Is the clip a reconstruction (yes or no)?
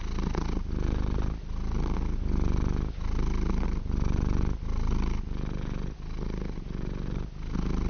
no